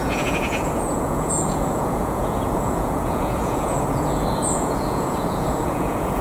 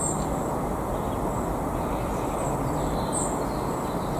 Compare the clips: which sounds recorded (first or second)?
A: second